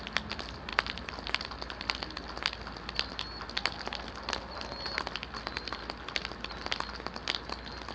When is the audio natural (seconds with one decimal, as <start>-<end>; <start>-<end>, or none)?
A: 0.0-7.9